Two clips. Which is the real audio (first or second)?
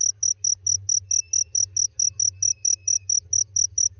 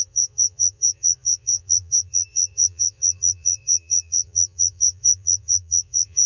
first